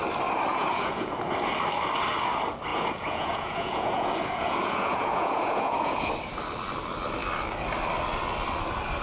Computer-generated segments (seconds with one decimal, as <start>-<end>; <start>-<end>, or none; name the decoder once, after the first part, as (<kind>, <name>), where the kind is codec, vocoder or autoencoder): 0.5-1.1 (vocoder, Vocos); 2.7-6.1